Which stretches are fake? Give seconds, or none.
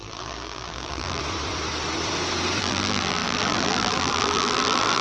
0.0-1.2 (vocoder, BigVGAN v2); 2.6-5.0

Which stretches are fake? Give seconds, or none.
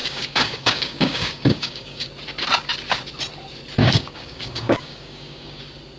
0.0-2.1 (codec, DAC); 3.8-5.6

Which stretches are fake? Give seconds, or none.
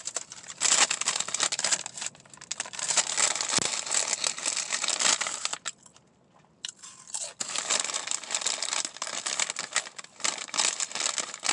none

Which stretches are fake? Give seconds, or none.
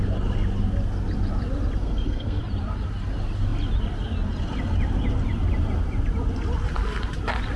1.8-2.4 (codec, SNAC)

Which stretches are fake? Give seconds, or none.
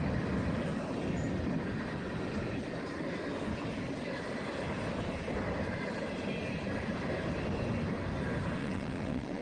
8.6-9.4 (vocoder, WaveNeXt)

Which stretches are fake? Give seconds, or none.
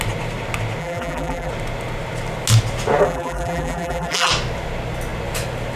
0.8-1.5 (vocoder, BigVGAN v2); 3.0-4.3